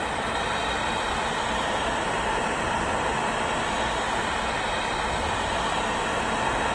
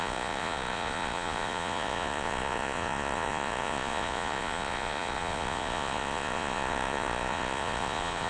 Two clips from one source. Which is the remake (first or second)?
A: second